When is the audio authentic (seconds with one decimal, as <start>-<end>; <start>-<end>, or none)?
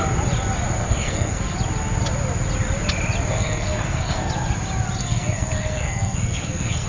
0.0-0.8; 1.4-3.3; 4.3-5.0